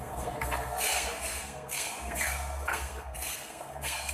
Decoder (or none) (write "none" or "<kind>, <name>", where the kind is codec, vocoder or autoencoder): codec, SNAC